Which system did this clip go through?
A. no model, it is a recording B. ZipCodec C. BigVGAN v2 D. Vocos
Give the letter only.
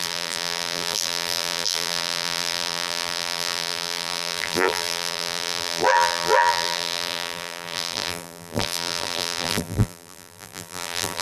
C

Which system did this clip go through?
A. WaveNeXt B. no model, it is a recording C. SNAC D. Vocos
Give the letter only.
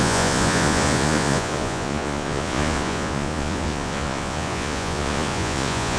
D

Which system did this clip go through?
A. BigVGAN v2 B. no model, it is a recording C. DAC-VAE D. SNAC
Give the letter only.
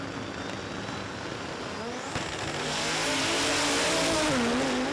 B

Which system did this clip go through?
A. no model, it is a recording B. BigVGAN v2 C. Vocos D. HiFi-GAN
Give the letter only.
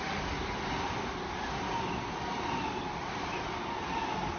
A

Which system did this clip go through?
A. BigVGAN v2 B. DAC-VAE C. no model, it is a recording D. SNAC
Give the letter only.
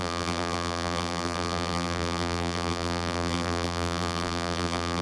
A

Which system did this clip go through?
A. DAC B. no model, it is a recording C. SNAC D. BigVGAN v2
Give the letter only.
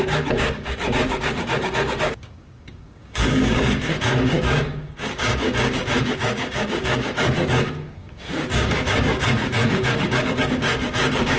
A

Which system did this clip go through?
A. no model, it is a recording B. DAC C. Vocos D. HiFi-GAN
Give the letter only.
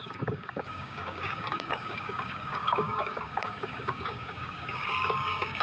B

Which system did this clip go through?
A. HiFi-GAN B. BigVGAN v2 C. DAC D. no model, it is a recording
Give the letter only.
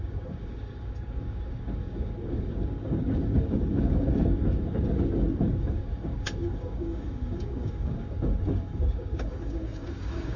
C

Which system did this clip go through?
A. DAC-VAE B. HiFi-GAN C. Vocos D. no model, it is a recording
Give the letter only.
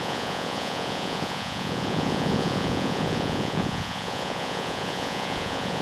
C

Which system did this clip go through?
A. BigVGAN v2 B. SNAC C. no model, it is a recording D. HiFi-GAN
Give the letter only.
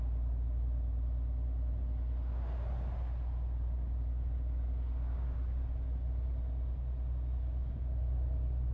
C